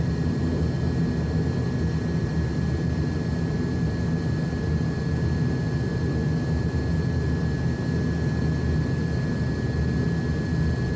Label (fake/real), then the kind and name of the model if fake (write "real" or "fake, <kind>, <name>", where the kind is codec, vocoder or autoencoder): real